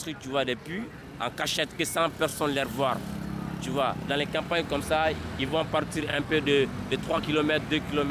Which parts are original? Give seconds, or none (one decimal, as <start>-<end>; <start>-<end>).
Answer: 0.0-1.0; 1.8-2.3; 4.8-6.1; 7.2-8.1